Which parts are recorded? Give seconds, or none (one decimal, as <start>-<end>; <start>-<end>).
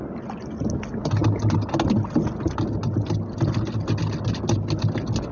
0.0-5.3